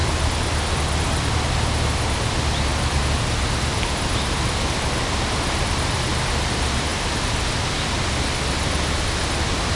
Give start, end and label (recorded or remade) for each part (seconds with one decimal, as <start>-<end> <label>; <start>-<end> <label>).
0.0-9.8 recorded